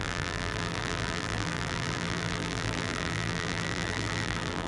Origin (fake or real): fake